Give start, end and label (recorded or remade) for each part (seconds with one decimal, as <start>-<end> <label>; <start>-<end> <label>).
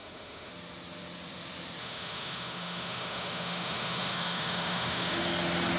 0.0-0.5 remade; 0.5-1.8 recorded; 1.8-5.2 remade; 5.2-5.8 recorded